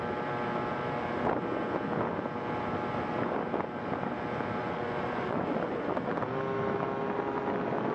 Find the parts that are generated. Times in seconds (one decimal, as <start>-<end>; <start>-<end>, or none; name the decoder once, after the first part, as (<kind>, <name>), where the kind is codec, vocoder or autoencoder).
4.6-6.1 (vocoder, Vocos)